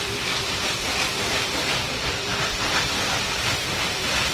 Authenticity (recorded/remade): remade